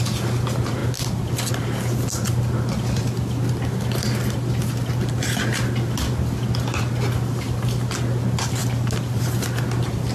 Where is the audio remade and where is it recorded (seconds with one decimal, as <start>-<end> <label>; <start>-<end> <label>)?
0.0-10.1 recorded